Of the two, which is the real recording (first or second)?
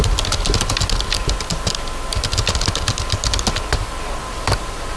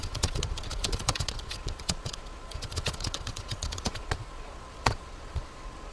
first